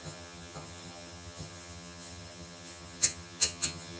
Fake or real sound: fake